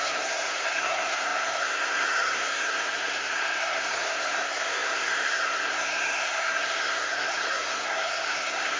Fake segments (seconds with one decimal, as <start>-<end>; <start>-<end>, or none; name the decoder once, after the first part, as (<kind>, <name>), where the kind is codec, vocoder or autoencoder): 0.0-8.8 (codec, SNAC)